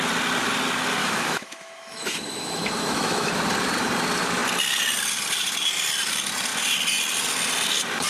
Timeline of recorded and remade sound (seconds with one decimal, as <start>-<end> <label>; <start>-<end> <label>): 0.0-1.0 recorded; 1.0-3.3 remade; 3.3-8.1 recorded